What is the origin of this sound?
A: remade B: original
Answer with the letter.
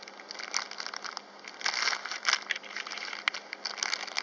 B